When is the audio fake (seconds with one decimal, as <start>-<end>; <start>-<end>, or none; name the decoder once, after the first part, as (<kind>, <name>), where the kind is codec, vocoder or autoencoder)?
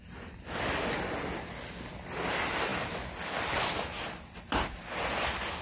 none